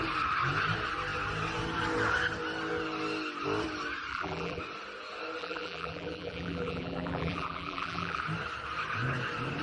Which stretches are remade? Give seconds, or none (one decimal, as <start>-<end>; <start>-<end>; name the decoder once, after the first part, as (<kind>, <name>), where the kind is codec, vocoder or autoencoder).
4.1-4.6 (vocoder, BigVGAN v2); 5.4-8.2